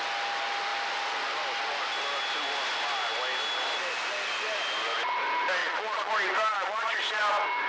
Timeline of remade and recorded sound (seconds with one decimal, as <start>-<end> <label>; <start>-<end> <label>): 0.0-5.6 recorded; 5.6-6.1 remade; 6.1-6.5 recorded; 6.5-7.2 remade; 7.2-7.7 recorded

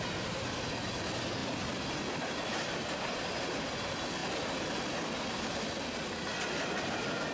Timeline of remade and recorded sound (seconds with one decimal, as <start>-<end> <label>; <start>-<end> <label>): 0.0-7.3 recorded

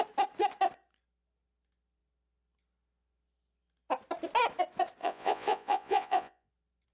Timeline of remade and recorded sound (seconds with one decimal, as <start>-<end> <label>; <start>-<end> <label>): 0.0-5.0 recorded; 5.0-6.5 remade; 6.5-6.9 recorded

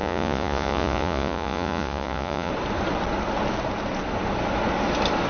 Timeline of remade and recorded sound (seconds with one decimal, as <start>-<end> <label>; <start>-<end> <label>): 0.0-2.5 remade; 2.5-5.3 recorded

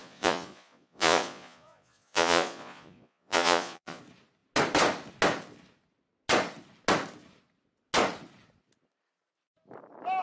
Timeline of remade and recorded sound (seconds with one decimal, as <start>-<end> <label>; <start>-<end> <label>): 0.0-4.0 remade; 4.0-10.2 recorded

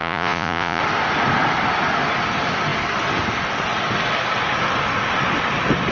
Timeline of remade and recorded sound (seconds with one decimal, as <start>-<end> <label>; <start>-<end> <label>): 0.0-0.8 remade; 0.8-5.9 recorded

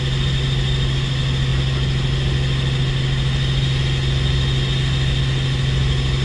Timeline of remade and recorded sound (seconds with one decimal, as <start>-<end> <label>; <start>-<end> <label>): 0.0-6.2 recorded

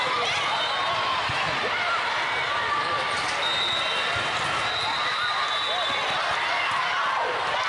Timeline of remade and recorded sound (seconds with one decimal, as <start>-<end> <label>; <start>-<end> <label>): 0.0-7.7 recorded